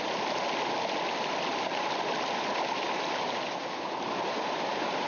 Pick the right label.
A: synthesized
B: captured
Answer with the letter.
B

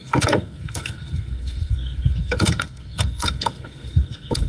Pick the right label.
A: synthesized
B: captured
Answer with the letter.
A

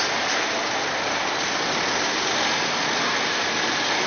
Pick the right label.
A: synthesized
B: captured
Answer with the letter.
B